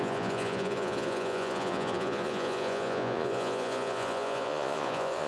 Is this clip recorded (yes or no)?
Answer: no